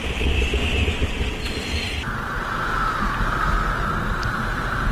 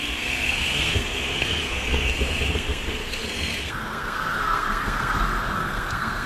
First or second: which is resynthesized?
second